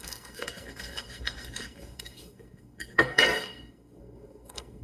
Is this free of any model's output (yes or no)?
no